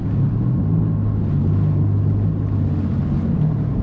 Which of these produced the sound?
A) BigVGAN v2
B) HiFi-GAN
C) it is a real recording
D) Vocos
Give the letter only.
C